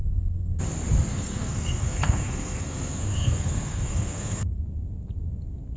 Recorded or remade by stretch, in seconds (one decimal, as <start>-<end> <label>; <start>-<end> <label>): 0.0-0.6 remade; 0.6-1.1 recorded; 1.1-4.6 remade; 4.6-5.8 recorded